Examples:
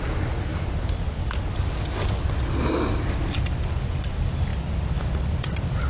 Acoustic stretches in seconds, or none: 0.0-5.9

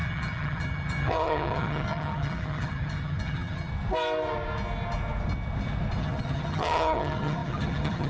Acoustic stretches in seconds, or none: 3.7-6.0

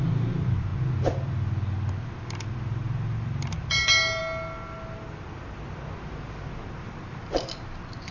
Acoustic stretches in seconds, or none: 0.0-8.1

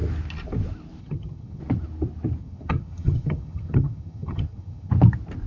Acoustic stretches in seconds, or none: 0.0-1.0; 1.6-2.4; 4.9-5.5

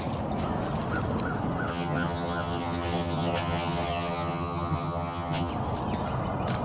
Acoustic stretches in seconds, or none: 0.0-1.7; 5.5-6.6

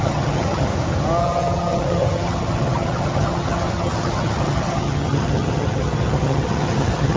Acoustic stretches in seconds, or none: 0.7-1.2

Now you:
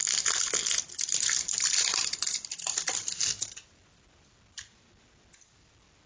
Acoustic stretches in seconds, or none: 0.0-6.1